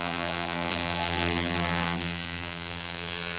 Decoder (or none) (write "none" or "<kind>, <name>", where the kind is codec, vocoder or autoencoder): vocoder, BigVGAN v2